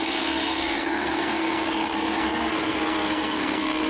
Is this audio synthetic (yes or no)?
yes